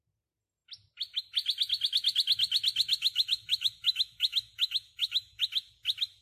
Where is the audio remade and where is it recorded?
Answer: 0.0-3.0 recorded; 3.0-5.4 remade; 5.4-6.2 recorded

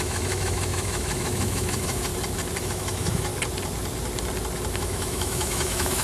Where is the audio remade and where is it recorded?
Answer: 0.0-2.1 remade; 2.1-2.6 recorded; 2.6-3.3 remade; 3.3-4.7 recorded; 4.7-6.0 remade

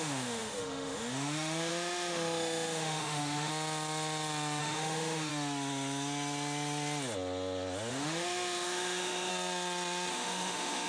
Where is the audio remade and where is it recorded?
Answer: 0.0-3.5 remade; 3.5-4.6 recorded; 4.6-5.3 remade; 5.3-7.9 recorded; 7.9-9.3 remade; 9.3-10.1 recorded; 10.1-10.9 remade

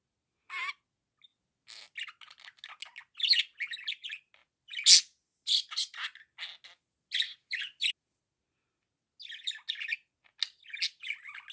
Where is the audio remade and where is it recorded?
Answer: 0.0-11.5 recorded

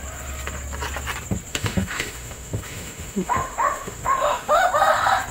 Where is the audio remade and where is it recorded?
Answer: 0.0-1.5 recorded; 1.5-4.7 remade; 4.7-5.3 recorded